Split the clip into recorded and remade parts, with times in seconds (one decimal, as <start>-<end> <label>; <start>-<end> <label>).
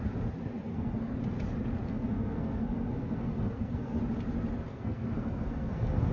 0.0-0.7 recorded; 0.7-1.2 remade; 1.2-1.9 recorded; 1.9-4.0 remade; 4.0-4.7 recorded; 4.7-6.1 remade